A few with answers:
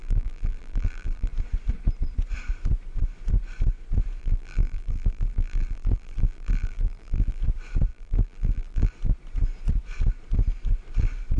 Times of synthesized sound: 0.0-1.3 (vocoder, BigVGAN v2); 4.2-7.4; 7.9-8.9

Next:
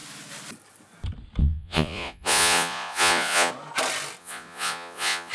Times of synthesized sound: 1.4-3.5 (vocoder, Vocos); 4.2-5.3

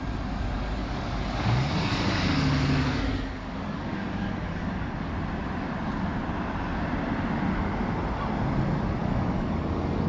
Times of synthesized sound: 0.8-5.1 (codec, DAC); 9.0-10.1

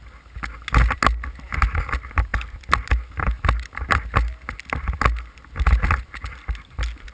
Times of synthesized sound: none

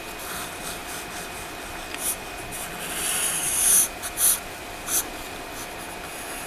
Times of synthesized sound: none

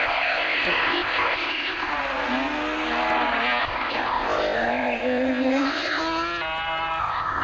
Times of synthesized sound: 0.0-1.9 (codec, ZipCodec); 3.6-6.0; 7.0-7.4

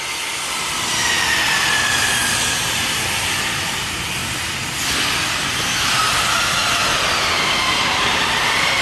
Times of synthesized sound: 0.0-1.0 (vocoder, BigVGAN v2); 2.1-4.2; 7.4-8.8

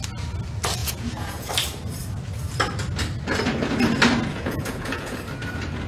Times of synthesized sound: 0.8-1.5 (vocoder, Vocos); 4.3-5.2